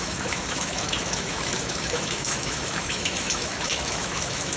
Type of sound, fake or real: fake